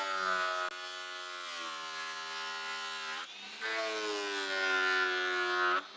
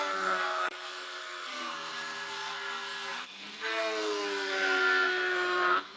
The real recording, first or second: first